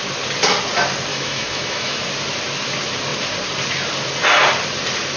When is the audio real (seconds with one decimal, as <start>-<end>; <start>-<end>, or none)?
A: 0.0-1.1; 2.0-5.2